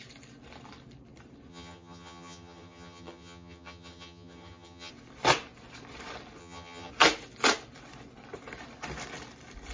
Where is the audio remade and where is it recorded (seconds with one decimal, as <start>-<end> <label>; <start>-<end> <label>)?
0.0-1.5 recorded; 1.5-4.9 remade; 4.9-6.4 recorded; 6.4-6.9 remade; 6.9-9.7 recorded